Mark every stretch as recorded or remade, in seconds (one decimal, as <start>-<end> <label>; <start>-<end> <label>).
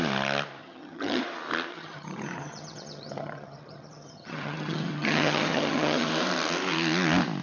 0.0-0.6 recorded; 0.6-1.2 remade; 1.2-1.7 recorded; 1.7-6.1 remade; 6.1-7.4 recorded